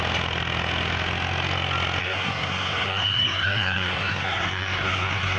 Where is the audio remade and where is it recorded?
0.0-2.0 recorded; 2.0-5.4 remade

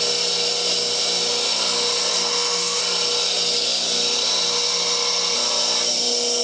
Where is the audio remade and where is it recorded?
0.0-2.1 recorded; 2.1-2.8 remade; 2.8-6.4 recorded

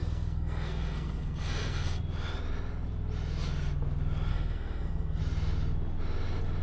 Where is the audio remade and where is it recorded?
0.0-2.0 remade; 2.0-4.3 recorded; 4.3-5.2 remade; 5.2-6.6 recorded

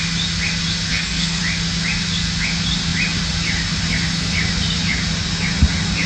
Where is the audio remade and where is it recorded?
0.0-0.9 recorded; 0.9-1.4 remade; 1.4-6.1 recorded

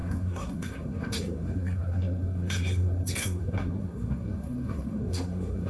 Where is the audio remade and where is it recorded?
0.0-5.7 remade

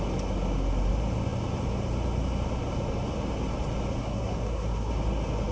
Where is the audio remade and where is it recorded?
0.0-4.0 recorded; 4.0-4.9 remade; 4.9-5.5 recorded